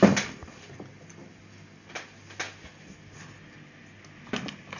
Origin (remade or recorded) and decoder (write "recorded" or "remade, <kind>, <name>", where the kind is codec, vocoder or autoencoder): recorded